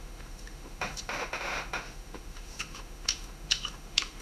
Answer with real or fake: fake